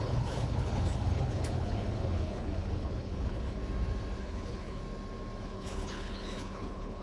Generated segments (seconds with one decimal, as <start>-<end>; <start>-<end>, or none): 0.0-3.6; 4.2-4.8; 5.4-7.0